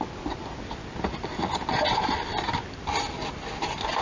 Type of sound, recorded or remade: recorded